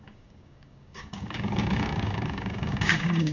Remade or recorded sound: remade